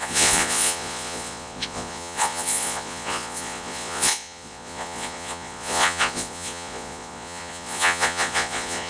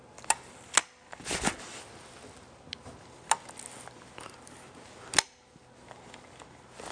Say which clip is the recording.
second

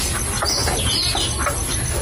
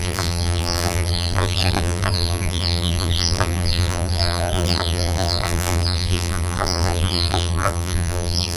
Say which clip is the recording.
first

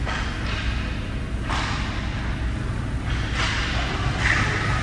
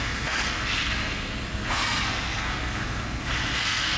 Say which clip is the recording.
first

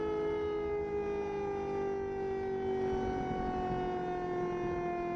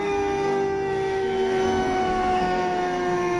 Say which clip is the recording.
first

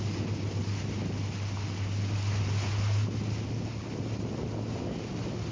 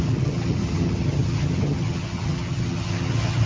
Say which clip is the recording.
first